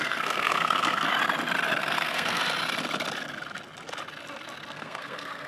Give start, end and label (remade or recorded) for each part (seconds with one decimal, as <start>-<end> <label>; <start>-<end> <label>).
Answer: 0.0-1.1 remade; 1.1-1.8 recorded; 1.8-2.4 remade; 2.4-4.7 recorded; 4.7-5.5 remade